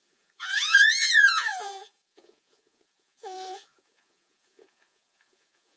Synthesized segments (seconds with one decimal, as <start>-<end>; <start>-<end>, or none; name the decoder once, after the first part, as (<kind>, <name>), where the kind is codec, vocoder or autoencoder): 0.0-5.8 (vocoder, Vocos)